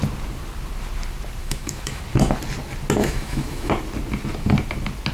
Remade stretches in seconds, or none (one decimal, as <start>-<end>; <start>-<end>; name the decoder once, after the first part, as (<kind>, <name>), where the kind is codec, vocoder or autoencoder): 1.4-2.0 (autoencoder, DAC-VAE); 3.0-3.7